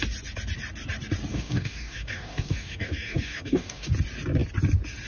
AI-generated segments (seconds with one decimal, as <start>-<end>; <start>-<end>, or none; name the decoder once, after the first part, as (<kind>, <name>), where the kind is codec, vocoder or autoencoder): 1.3-3.9 (codec, DAC)